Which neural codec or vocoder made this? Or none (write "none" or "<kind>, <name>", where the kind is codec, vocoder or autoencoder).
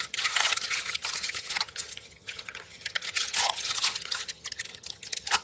vocoder, HiFi-GAN